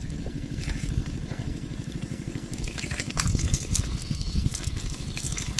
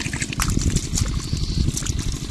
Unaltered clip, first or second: second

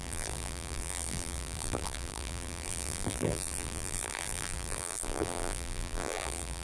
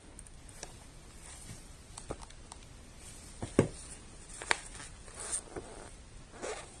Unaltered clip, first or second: second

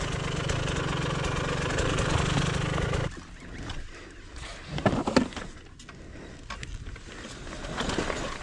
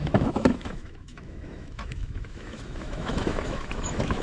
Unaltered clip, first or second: first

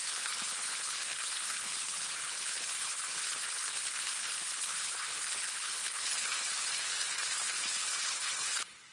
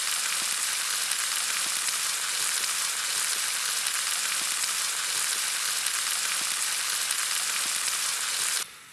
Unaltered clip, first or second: second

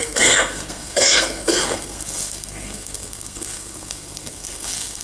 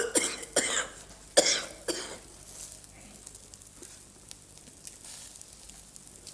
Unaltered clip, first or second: second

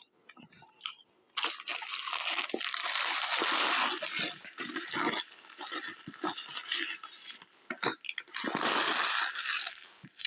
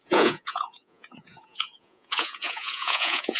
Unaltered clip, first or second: first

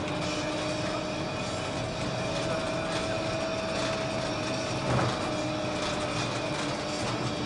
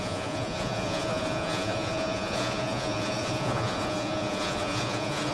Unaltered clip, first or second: first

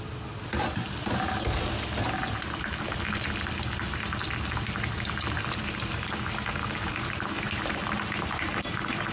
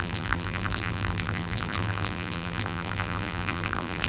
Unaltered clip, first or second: first